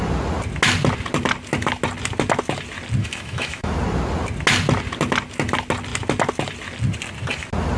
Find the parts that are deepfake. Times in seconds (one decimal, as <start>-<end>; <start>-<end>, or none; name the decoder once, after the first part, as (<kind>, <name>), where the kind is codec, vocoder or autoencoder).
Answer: 3.0-3.7 (autoencoder, DAC-VAE)